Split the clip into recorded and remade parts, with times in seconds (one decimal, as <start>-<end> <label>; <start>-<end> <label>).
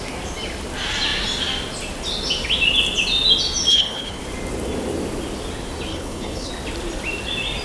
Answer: 0.0-3.7 recorded; 3.7-4.2 remade; 4.2-5.9 recorded; 5.9-6.5 remade; 6.5-7.6 recorded